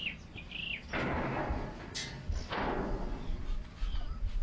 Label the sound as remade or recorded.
recorded